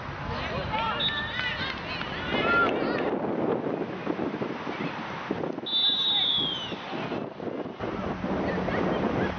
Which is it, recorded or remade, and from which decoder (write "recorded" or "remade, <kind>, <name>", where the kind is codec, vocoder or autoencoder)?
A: recorded